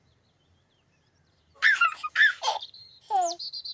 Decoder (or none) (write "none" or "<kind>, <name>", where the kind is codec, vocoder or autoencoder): vocoder, BigVGAN v2